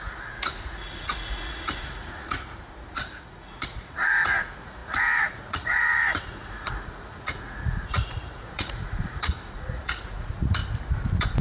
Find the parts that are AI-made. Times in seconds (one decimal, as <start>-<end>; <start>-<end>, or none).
0.0-10.6